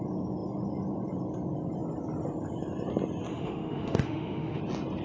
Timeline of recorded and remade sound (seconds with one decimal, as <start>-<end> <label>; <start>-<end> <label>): 0.0-3.3 recorded; 3.3-4.6 remade; 4.6-5.0 recorded